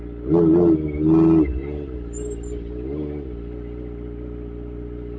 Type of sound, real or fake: real